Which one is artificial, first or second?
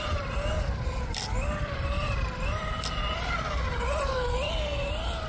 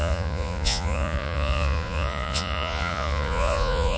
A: second